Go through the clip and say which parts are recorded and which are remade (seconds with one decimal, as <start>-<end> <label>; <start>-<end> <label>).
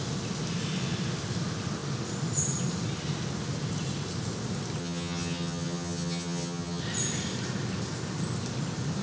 0.0-4.8 recorded; 4.8-6.8 remade; 6.8-9.0 recorded